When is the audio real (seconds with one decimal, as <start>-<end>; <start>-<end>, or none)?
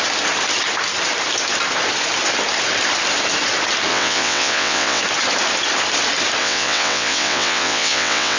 0.0-3.9; 5.0-6.4